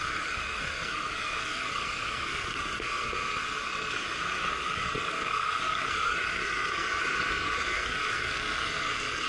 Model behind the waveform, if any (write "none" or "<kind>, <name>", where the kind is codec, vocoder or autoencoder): codec, SNAC